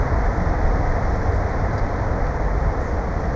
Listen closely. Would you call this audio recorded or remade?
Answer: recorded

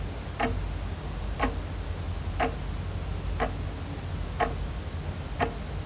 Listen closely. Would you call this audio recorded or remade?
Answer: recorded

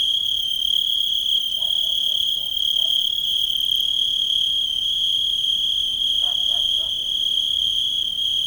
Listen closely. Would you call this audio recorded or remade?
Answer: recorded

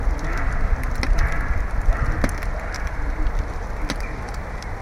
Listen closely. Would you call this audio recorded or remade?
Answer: recorded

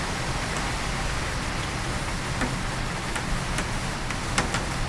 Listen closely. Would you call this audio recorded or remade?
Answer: recorded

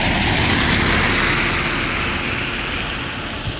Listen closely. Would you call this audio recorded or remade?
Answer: recorded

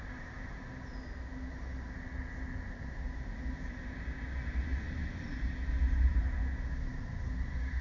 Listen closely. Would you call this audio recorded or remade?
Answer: recorded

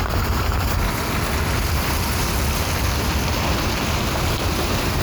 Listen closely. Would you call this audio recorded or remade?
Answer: remade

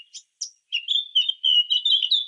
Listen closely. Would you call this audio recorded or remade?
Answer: recorded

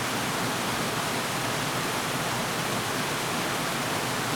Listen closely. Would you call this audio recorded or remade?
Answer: recorded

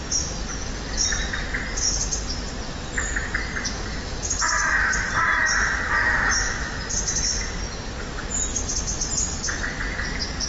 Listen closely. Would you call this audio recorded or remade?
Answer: recorded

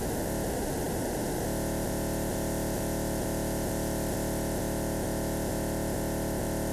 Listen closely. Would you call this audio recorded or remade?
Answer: remade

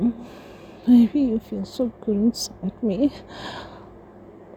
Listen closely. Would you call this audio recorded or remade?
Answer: recorded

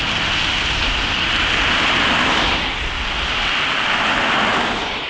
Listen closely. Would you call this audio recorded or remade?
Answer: recorded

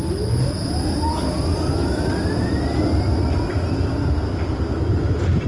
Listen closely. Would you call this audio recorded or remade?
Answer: recorded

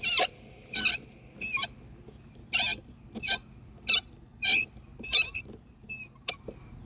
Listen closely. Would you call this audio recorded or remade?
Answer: recorded